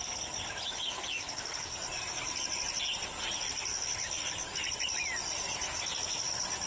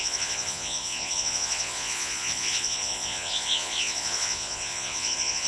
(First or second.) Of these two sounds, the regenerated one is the second